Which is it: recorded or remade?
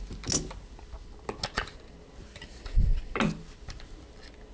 recorded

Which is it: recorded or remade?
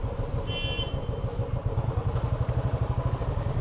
recorded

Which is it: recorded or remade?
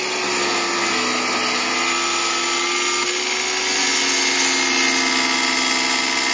recorded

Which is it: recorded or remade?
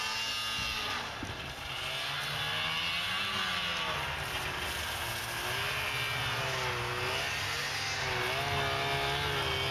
recorded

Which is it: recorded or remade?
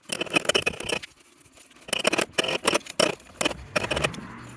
recorded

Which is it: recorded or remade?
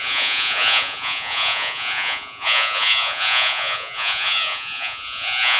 remade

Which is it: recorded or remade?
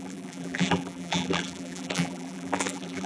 remade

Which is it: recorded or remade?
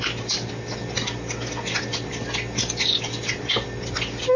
recorded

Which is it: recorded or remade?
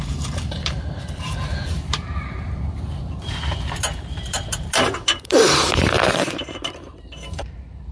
remade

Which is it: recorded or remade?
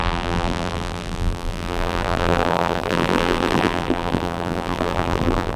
remade